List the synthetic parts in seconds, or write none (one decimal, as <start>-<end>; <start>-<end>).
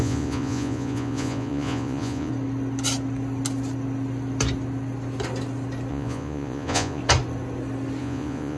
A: 0.0-2.3; 5.9-7.0; 8.0-8.6